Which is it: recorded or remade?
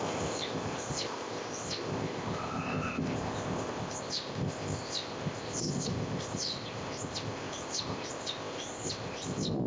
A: remade